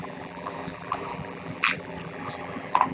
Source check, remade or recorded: remade